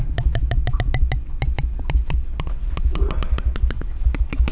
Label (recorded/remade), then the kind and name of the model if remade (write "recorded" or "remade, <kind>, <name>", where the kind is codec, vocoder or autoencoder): recorded